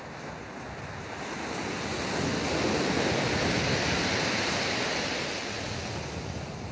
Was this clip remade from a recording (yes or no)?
no